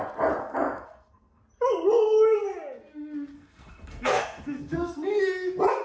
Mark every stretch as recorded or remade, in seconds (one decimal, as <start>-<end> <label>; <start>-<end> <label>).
0.0-0.4 recorded; 0.4-1.4 remade; 1.4-3.3 recorded; 3.3-5.2 remade; 5.2-5.8 recorded